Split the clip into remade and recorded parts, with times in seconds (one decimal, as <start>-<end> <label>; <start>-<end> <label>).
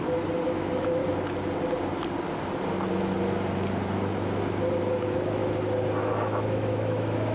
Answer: 0.0-1.0 remade; 1.0-4.8 recorded; 4.8-5.4 remade; 5.4-6.0 recorded; 6.0-7.3 remade